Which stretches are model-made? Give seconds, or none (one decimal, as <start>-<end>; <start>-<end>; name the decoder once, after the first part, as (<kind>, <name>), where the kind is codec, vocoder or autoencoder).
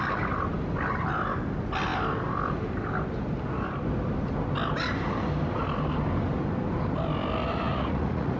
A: 7.4-8.4 (vocoder, Vocos)